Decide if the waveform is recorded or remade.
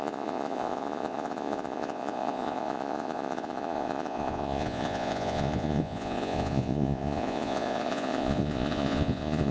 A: remade